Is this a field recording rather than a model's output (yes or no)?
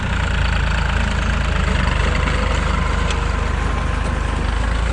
yes